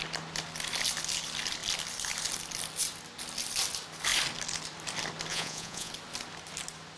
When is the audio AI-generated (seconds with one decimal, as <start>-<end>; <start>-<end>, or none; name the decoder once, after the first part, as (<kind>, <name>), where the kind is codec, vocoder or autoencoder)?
5.3-5.9 (vocoder, Vocos)